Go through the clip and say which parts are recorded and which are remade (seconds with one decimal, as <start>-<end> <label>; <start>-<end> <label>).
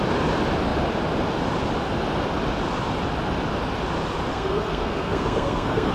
0.0-4.3 recorded; 4.3-5.9 remade